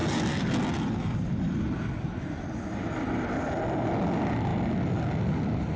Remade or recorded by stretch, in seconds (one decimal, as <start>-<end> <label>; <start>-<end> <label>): 0.0-3.5 remade; 3.5-5.8 recorded